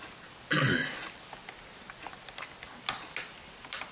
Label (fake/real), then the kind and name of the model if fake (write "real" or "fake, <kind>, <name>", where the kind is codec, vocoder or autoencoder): real